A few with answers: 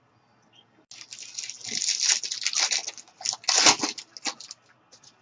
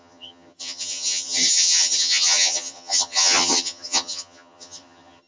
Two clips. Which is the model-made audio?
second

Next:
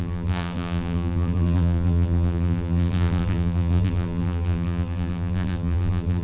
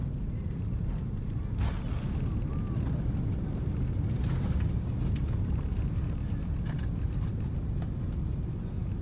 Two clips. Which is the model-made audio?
first